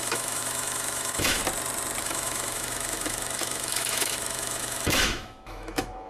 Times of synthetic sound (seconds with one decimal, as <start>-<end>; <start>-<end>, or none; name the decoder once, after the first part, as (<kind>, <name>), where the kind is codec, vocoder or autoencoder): 0.0-1.4 (autoencoder, DAC-VAE); 2.0-6.1